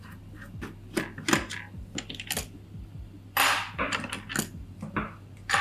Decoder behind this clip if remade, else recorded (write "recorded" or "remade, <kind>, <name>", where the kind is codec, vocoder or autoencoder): recorded